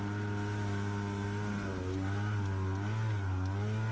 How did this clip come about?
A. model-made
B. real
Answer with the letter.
B